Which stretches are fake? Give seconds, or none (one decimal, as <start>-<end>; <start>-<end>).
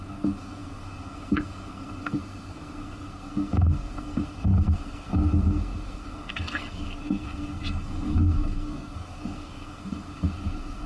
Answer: 0.0-10.9